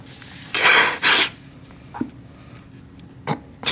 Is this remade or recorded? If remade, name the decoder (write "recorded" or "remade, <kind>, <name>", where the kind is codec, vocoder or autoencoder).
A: recorded